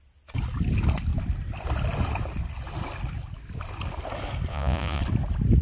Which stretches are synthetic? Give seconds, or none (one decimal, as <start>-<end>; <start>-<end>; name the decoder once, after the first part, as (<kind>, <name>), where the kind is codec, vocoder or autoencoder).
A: 4.5-5.0 (vocoder, Vocos)